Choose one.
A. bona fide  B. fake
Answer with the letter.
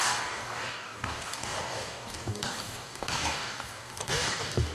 B